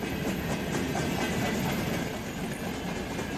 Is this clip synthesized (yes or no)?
no